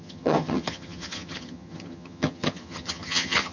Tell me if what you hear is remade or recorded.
remade